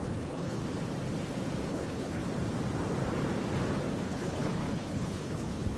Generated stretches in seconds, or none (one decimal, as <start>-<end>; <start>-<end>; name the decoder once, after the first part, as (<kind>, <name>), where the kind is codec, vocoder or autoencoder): 0.0-0.6 (codec, HILCodec); 1.7-2.2; 4.0-5.8